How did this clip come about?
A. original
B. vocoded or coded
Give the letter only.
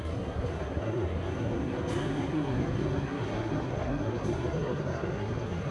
B